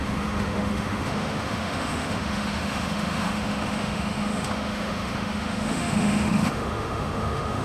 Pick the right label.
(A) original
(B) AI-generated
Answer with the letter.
B